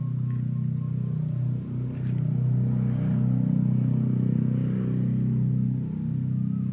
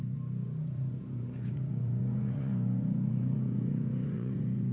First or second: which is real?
first